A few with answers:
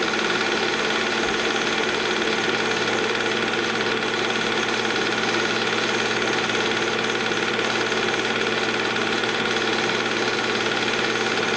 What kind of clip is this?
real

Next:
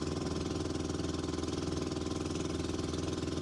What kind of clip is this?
real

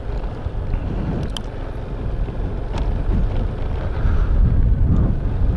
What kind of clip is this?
real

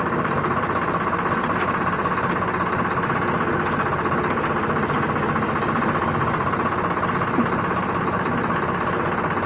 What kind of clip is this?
real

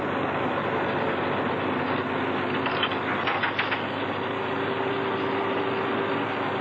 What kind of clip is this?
real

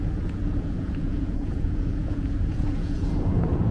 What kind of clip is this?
fake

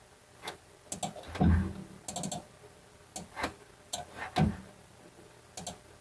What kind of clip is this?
real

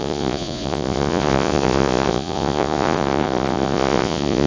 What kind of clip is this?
fake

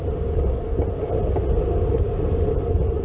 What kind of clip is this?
real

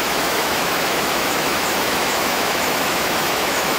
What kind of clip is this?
fake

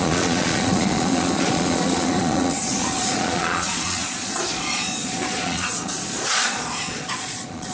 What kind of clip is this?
fake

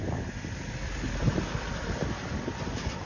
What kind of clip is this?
real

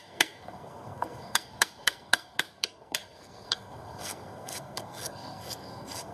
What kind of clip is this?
fake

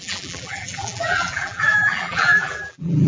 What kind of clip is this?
fake